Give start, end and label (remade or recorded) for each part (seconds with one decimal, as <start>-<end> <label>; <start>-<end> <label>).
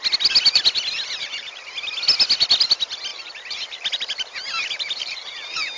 0.0-1.2 recorded; 1.2-1.7 remade; 1.7-3.1 recorded; 3.1-5.8 remade